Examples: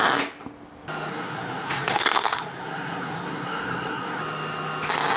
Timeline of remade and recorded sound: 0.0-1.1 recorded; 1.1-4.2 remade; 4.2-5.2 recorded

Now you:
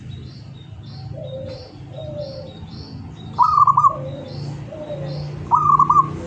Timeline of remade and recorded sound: 0.0-6.3 recorded

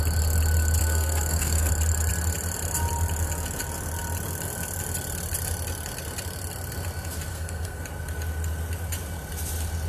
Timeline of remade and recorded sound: 0.0-0.8 recorded; 0.8-1.7 remade; 1.7-7.3 recorded; 7.3-7.8 remade; 7.8-9.9 recorded

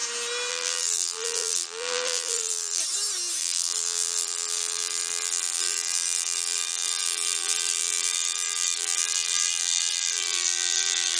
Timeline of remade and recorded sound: 0.0-0.5 recorded; 0.5-2.8 remade; 2.8-3.4 recorded; 3.4-11.2 remade

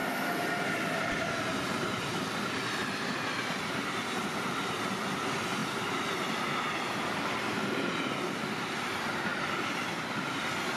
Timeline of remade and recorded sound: 0.0-2.0 recorded; 2.0-10.8 remade